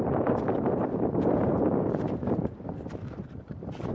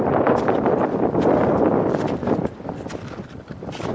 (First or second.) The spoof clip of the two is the first